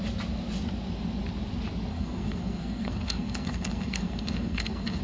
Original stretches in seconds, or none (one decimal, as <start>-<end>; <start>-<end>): 0.0-1.9

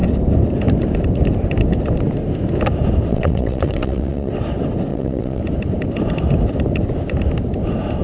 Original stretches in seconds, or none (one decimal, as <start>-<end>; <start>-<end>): 0.0-3.1; 4.3-4.9; 5.4-8.0

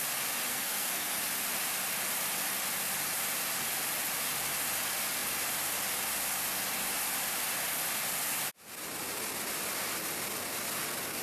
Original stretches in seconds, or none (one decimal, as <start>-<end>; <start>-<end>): 0.0-0.5; 1.2-11.2